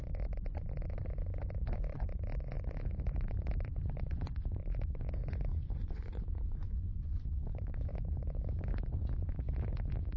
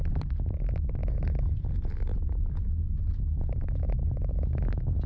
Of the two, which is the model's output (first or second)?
first